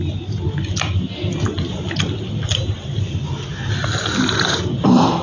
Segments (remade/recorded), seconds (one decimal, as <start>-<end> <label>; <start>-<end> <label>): 0.0-0.6 remade; 0.6-2.6 recorded; 2.6-3.5 remade; 3.5-4.6 recorded; 4.6-5.2 remade